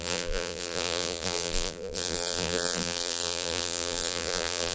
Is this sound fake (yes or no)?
yes